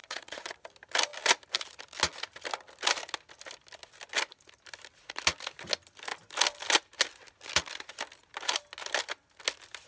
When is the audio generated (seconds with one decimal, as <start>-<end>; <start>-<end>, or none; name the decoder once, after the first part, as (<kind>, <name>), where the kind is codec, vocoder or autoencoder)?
0.0-0.5 (vocoder, Vocos)